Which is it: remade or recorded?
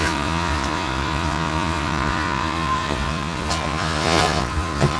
remade